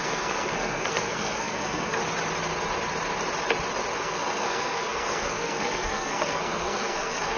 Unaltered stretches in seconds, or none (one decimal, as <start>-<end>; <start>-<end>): 2.0-4.0